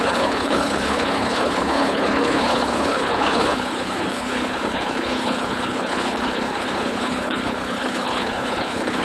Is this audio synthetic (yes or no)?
yes